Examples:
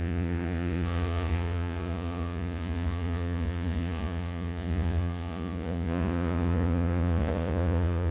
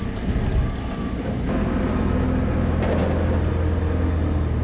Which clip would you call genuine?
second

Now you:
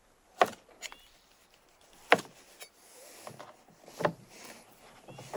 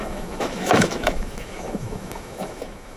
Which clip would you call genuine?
first